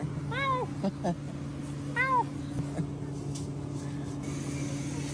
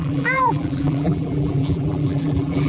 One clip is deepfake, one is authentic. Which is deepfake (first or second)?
second